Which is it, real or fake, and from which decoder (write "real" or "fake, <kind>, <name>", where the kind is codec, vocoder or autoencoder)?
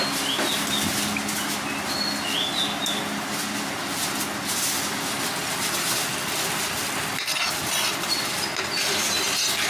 real